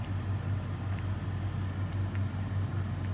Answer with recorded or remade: recorded